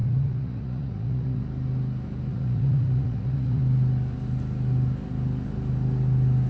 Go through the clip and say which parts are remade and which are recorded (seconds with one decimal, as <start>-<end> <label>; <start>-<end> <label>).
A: 0.0-1.4 remade; 1.4-2.3 recorded; 2.3-3.6 remade; 3.6-6.5 recorded